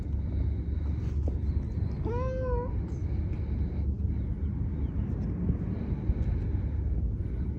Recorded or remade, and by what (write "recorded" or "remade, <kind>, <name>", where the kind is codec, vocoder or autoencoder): recorded